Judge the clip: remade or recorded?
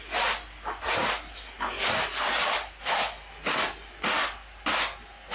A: recorded